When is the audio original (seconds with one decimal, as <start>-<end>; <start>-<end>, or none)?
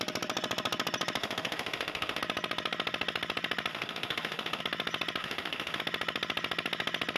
0.0-1.2; 2.2-3.7; 4.6-5.2; 5.8-7.2